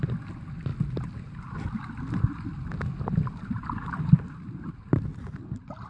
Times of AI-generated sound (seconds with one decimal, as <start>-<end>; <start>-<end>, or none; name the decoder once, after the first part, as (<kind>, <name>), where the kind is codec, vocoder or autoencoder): none